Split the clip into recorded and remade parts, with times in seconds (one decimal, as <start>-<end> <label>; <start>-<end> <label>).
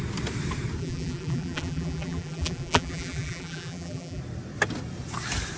0.0-0.8 recorded; 0.8-4.2 remade; 4.2-5.6 recorded